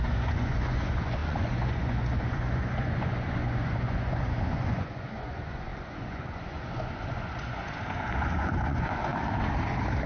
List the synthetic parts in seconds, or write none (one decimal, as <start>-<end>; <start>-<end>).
0.0-9.1